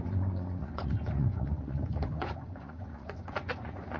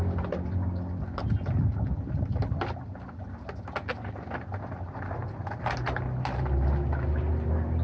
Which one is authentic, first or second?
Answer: second